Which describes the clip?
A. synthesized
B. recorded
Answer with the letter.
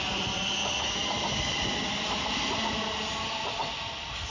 B